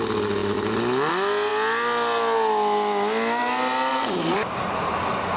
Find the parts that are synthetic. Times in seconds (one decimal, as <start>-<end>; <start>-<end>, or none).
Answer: 3.9-4.9